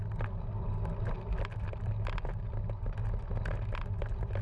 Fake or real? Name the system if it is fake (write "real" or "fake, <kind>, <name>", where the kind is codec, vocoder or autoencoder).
real